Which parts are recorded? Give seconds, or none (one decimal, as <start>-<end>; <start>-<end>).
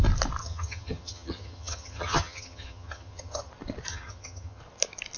0.0-0.4; 3.5-3.9; 4.6-5.2